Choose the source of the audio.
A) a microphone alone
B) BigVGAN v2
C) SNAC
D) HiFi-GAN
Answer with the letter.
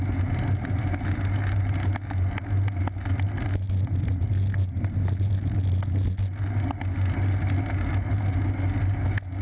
A